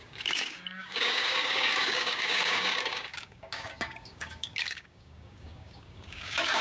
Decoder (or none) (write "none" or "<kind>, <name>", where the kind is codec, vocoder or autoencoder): codec, DAC